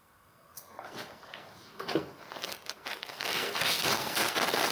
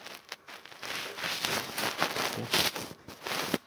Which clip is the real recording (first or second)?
second